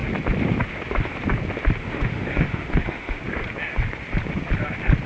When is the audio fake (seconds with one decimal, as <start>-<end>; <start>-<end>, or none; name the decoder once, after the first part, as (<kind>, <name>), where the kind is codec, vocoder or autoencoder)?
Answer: 1.8-3.2 (autoencoder, DAC-VAE)